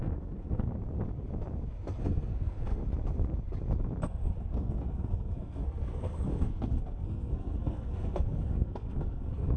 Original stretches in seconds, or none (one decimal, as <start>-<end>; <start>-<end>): 0.7-2.0; 2.8-4.4